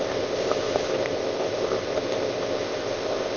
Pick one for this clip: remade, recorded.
remade